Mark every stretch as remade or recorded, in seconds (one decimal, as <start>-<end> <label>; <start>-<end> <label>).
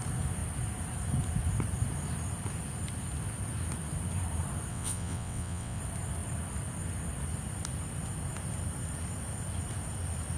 0.0-4.7 recorded; 4.7-5.8 remade; 5.8-10.4 recorded